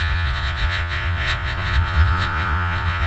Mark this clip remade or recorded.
remade